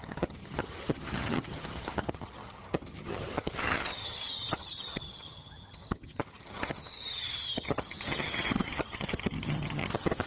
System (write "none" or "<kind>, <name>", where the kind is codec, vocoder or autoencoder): vocoder, HiFi-GAN